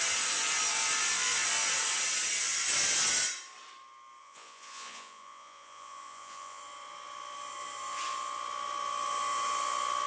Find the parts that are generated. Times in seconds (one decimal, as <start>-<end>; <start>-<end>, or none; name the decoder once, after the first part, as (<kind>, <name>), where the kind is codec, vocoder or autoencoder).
4.2-6.6 (vocoder, Vocos)